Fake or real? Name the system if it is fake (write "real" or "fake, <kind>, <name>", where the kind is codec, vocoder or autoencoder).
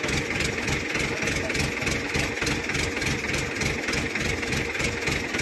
real